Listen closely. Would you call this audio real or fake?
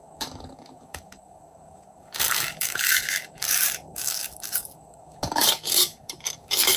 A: fake